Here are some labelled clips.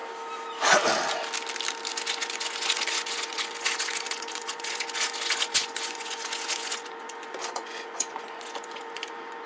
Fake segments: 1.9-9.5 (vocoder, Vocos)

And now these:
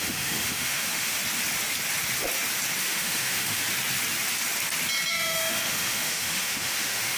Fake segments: 0.0-1.2 (autoencoder, DAC-VAE); 2.8-3.6; 5.1-7.2

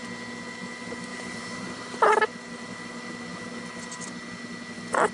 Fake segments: 1.1-2.1 (vocoder, BigVGAN v2)

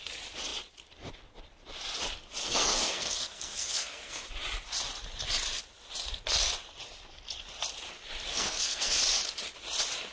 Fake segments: 2.4-4.3 (codec, SNAC); 8.3-9.0

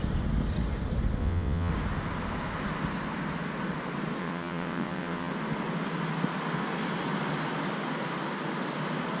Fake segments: 1.2-1.7 (vocoder, WaveNeXt); 4.2-5.3

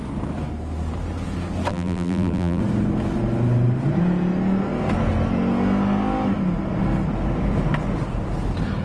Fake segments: 1.7-2.6 (vocoder, BigVGAN v2)

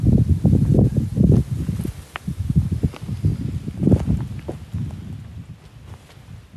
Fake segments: none